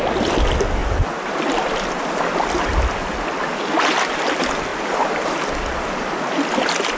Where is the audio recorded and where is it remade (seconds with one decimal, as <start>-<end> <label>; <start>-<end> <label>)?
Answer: 0.0-7.0 recorded